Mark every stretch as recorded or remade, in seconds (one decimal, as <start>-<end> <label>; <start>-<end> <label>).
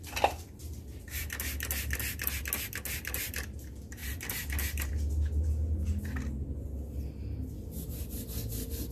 0.0-8.9 recorded